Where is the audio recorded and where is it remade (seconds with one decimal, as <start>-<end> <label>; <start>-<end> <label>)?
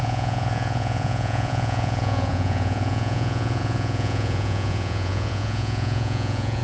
0.0-6.6 remade